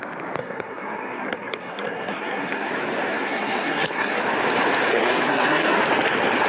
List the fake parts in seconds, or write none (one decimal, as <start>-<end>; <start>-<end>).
0.4-2.7; 3.1-4.2; 4.9-5.8

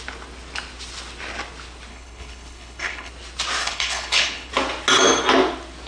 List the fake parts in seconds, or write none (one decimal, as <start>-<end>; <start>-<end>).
1.9-3.1; 3.6-4.5

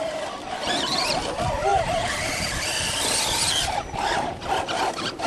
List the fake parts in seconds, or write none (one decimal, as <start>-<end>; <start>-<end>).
1.7-3.5

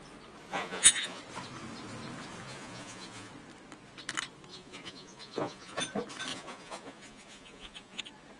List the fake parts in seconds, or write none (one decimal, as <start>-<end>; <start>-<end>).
0.5-1.2; 2.4-3.3; 4.5-5.8; 6.3-8.0